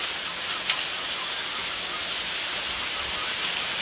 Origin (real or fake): real